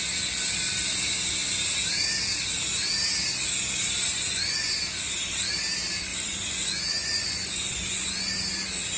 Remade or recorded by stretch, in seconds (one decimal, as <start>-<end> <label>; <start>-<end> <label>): 0.0-4.1 recorded; 4.1-4.8 remade; 4.8-6.1 recorded; 6.1-8.3 remade; 8.3-9.0 recorded